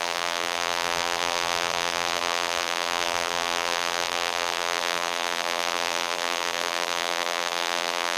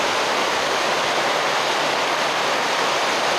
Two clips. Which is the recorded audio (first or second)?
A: second